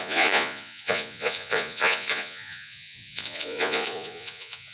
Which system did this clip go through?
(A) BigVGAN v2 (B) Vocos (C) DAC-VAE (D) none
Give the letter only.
B